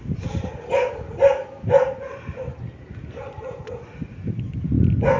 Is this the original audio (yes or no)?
yes